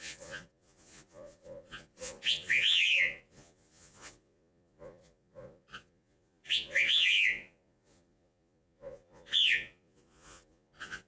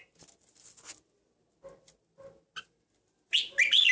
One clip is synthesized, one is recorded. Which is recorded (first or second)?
second